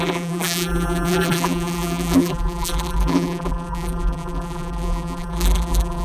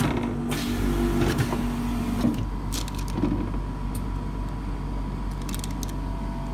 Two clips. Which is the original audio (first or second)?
second